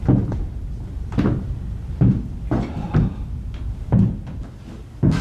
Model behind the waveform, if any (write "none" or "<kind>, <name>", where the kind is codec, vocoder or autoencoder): none